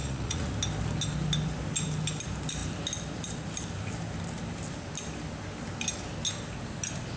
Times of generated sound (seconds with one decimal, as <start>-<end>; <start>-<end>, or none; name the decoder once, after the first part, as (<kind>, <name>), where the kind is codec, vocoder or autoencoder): 0.0-0.5 (vocoder, Vocos)